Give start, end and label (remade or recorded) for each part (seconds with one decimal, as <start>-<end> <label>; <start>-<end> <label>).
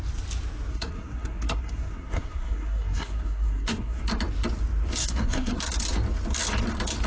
0.0-0.7 recorded; 0.7-4.0 remade; 4.0-5.0 recorded; 5.0-5.6 remade; 5.6-7.1 recorded